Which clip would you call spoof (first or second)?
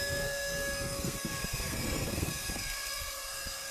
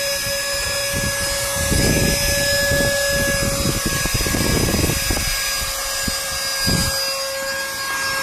first